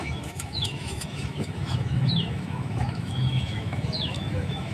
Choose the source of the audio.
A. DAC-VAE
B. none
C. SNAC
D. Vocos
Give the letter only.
A